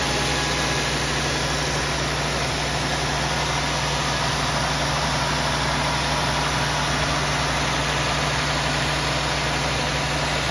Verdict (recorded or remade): recorded